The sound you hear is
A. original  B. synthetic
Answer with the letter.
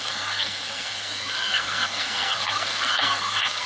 B